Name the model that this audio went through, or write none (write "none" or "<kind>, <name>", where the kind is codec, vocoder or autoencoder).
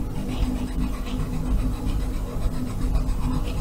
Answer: none